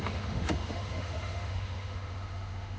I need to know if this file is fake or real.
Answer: fake